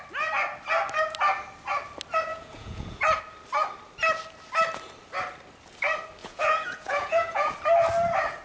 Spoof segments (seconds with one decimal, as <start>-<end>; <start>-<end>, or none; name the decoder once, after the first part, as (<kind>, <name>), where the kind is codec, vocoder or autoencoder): 2.3-3.2 (vocoder, Vocos); 6.2-7.5